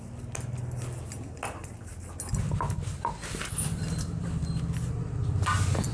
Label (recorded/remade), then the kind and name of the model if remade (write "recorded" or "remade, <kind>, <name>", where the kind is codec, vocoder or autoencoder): recorded